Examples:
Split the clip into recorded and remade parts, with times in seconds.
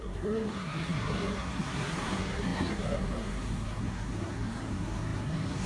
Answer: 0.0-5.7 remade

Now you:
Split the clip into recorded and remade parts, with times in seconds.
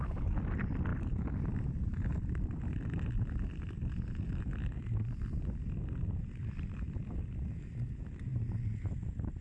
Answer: 0.0-9.4 recorded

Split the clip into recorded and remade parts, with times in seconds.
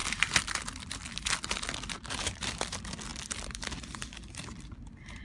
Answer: 0.0-5.2 recorded